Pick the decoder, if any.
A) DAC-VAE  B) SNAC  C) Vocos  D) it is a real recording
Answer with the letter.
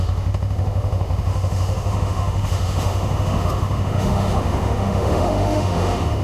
A